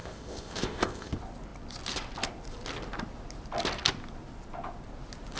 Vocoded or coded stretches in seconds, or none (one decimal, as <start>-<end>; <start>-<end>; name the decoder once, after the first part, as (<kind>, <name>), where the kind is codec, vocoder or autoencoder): 0.0-1.1 (codec, ZipCodec)